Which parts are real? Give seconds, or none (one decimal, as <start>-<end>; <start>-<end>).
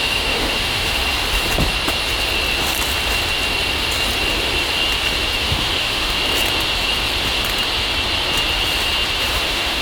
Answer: 1.0-5.4; 6.2-9.3